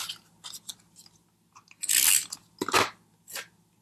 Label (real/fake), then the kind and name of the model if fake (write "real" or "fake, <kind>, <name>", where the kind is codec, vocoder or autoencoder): real